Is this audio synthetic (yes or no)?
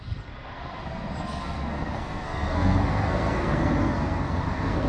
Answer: yes